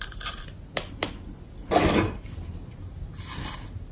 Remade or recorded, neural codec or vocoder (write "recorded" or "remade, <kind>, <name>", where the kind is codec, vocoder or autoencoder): recorded